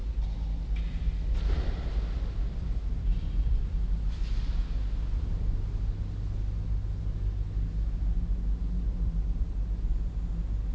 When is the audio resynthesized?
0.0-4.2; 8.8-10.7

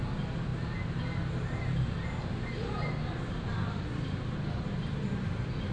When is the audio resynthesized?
4.9-5.7

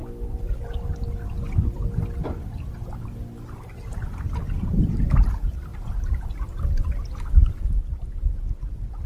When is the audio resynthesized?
none

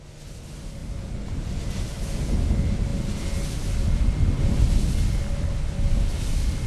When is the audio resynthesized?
0.8-1.7; 2.9-4.6